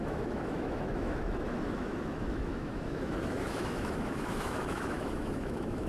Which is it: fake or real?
fake